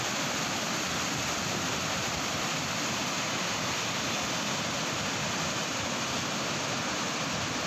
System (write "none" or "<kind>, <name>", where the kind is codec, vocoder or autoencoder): none